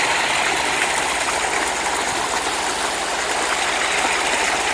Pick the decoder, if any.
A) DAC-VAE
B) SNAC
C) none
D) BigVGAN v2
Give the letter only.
C